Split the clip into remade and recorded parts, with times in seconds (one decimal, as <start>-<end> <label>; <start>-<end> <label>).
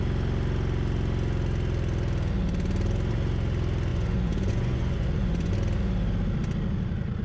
0.0-3.9 recorded; 3.9-5.5 remade; 5.5-7.2 recorded